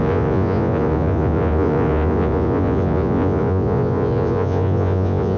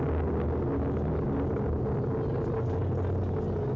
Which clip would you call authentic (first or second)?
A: second